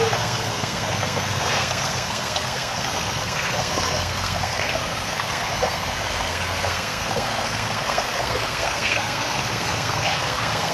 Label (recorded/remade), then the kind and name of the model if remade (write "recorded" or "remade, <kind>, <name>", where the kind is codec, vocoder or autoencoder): remade, codec, SNAC